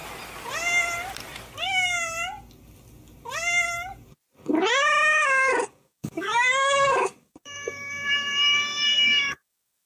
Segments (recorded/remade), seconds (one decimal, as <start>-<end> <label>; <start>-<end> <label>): 0.0-5.1 recorded; 5.1-9.9 remade